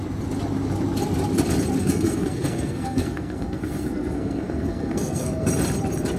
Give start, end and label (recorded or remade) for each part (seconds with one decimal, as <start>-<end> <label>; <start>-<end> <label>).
0.0-1.8 recorded; 1.8-5.5 remade; 5.5-6.2 recorded